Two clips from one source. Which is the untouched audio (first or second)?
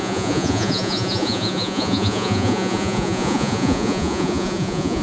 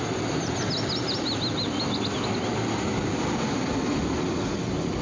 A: second